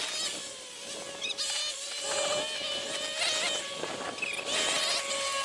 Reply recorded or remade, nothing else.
recorded